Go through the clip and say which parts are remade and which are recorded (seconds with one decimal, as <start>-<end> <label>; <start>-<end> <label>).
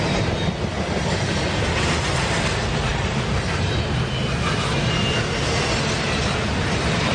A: 0.0-7.1 recorded